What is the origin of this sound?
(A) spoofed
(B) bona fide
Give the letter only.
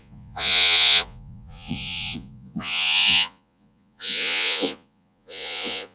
A